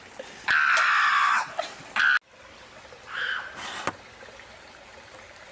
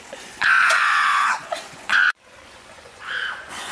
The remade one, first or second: second